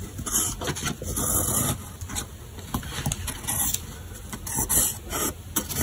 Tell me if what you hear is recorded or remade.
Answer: recorded